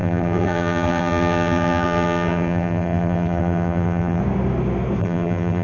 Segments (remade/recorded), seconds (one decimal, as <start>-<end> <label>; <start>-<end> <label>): 0.0-4.2 remade; 4.2-5.0 recorded; 5.0-5.6 remade